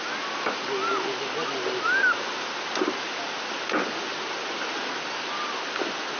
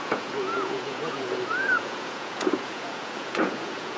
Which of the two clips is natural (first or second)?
first